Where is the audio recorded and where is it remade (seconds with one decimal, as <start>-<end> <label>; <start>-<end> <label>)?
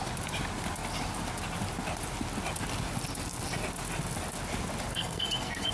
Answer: 0.0-4.9 recorded; 4.9-5.7 remade